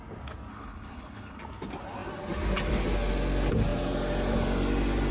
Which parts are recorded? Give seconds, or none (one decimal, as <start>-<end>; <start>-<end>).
0.0-0.5; 1.4-5.1